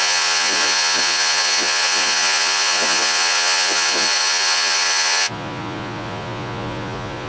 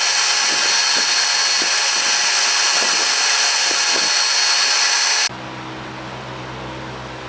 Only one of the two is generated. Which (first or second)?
first